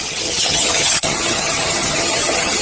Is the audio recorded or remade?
remade